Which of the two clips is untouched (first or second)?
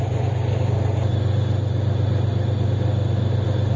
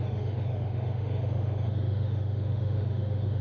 first